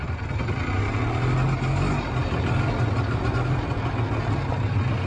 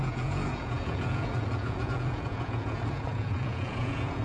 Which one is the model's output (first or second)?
second